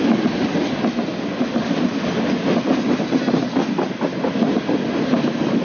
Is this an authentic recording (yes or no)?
yes